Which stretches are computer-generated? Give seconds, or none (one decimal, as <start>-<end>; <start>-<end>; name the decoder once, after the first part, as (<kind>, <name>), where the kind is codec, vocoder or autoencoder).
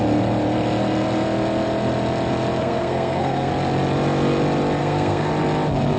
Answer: 2.6-3.5 (codec, SNAC); 4.8-5.3